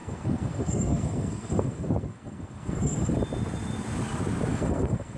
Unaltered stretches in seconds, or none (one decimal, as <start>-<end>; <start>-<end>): 3.1-4.5

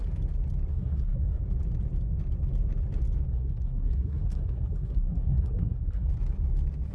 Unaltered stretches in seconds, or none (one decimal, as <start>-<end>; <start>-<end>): 0.0-0.7; 1.4-3.3; 6.1-6.9

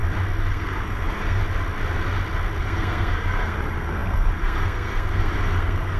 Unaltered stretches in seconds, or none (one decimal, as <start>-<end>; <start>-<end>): 0.0-0.5; 1.4-2.6

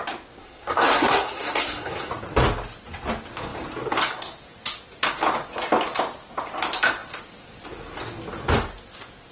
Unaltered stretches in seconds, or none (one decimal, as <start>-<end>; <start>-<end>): 0.0-0.4; 2.1-9.3

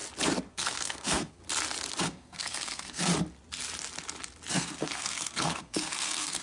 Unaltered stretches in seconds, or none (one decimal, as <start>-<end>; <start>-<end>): 0.0-0.5; 1.4-2.0; 3.1-4.5

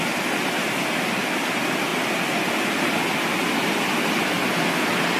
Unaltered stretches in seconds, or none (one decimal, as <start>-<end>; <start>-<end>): 0.0-5.2